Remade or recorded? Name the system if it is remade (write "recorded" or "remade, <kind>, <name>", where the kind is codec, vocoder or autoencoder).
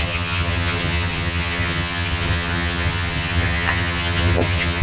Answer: remade, vocoder, HiFi-GAN